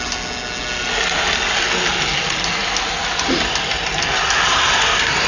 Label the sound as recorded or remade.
recorded